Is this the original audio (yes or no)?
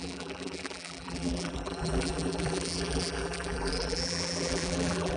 no